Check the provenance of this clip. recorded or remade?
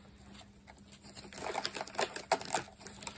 recorded